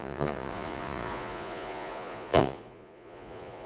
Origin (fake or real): fake